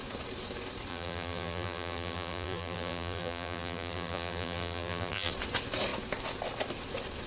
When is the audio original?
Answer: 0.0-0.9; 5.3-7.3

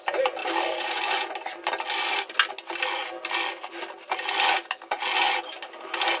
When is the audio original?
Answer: 0.0-6.2

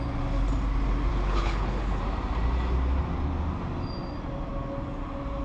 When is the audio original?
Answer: 0.0-1.1; 2.0-5.4

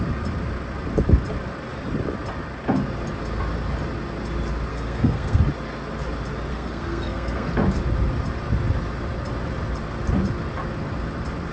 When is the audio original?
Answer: 0.0-4.7; 5.4-6.5; 7.5-11.5

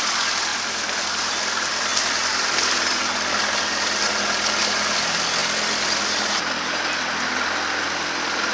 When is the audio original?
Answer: 0.5-1.0; 1.9-4.6; 5.4-7.8

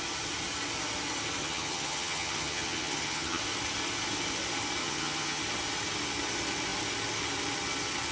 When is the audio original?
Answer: 0.0-1.4; 3.4-4.8; 5.4-8.1